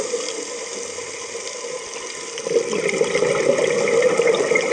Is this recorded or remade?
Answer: recorded